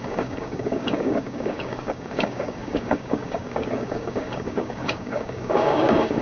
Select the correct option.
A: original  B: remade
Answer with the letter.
B